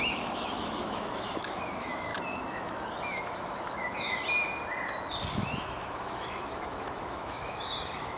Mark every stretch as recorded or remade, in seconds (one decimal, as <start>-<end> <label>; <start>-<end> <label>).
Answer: 0.0-4.2 remade; 4.2-5.3 recorded; 5.3-8.2 remade